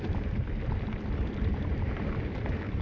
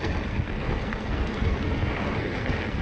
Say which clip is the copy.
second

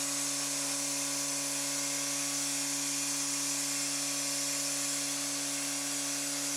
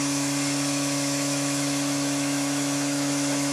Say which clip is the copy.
second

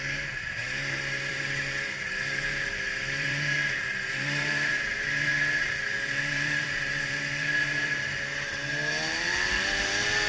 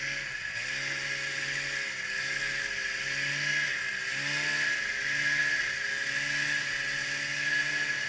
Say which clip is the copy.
first